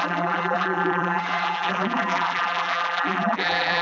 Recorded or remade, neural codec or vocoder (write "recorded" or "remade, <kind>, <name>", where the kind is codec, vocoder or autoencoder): remade, vocoder, BigVGAN v2